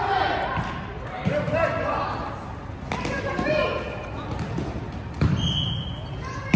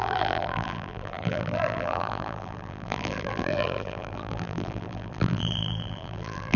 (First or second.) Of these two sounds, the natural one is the first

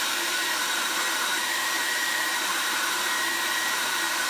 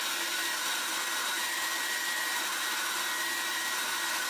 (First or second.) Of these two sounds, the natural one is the second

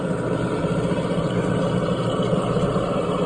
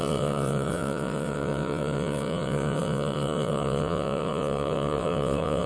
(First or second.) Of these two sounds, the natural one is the first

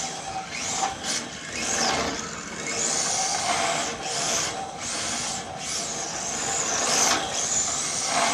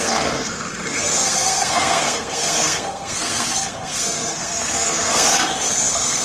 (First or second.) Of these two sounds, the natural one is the first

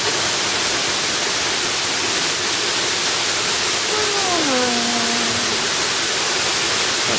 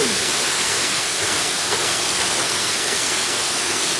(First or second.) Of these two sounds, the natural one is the first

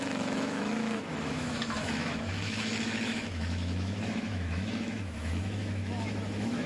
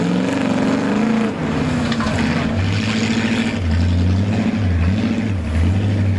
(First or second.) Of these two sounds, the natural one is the second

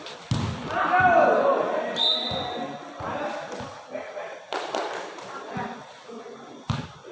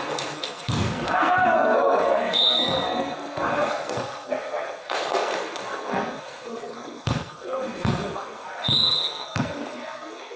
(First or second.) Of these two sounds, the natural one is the first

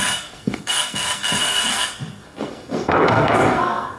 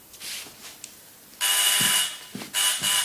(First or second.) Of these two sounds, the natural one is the second